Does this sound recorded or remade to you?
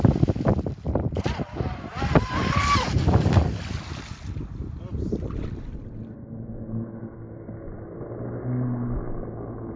recorded